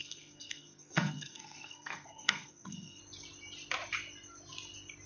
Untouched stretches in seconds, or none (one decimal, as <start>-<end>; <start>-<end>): 3.0-5.1